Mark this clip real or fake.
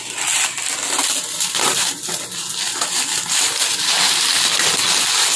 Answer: real